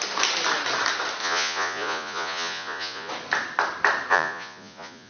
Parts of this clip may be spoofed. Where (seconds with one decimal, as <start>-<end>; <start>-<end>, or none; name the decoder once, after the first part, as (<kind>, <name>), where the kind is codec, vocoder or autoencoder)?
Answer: 1.2-3.1 (vocoder, Vocos); 4.1-5.1